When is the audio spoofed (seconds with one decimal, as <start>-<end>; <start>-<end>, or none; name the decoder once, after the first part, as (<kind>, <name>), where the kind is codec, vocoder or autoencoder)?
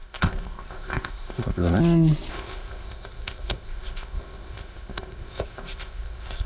0.0-1.8 (codec, ZipCodec); 2.3-6.5